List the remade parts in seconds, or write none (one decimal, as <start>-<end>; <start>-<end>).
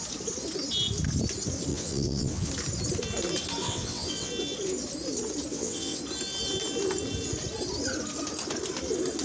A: 1.7-2.5; 3.6-4.3; 5.5-6.0